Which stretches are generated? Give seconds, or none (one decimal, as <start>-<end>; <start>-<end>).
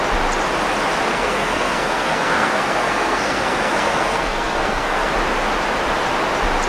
1.1-5.1